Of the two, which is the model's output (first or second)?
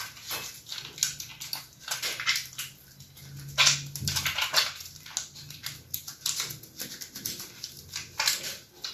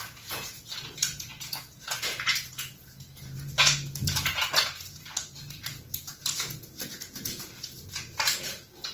second